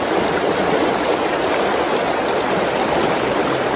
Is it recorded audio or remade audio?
recorded